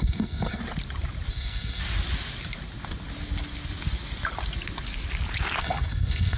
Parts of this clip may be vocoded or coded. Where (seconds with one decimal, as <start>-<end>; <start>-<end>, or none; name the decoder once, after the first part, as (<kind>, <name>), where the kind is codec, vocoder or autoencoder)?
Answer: 0.0-0.6 (codec, SNAC); 1.3-1.8; 5.6-6.4